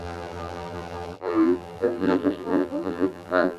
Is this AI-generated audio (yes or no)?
yes